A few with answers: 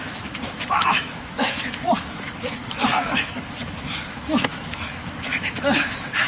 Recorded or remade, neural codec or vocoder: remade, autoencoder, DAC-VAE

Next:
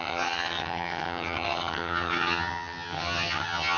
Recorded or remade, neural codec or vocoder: remade, vocoder, HiFi-GAN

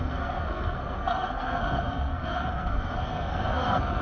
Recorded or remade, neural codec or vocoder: remade, codec, SNAC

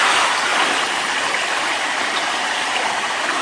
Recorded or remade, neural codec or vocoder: recorded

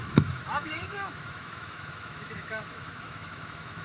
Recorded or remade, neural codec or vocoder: remade, autoencoder, DAC-VAE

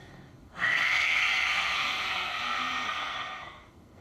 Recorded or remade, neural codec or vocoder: remade, codec, SNAC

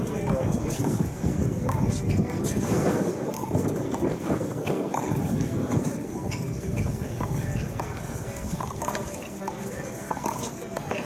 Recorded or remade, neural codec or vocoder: remade, codec, SNAC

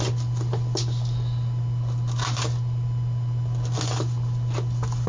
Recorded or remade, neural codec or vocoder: recorded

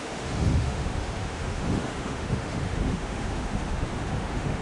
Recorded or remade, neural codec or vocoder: remade, autoencoder, DAC-VAE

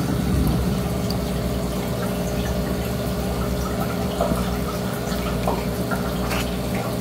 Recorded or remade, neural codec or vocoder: recorded